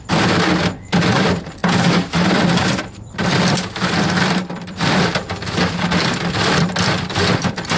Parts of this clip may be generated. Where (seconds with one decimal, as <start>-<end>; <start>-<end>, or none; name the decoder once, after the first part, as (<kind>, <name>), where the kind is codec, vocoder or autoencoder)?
0.0-1.6 (vocoder, BigVGAN v2); 2.4-7.8